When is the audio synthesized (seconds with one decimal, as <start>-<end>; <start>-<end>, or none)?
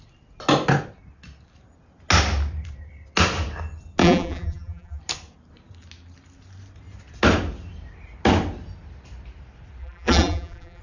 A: 4.0-5.0; 9.8-10.8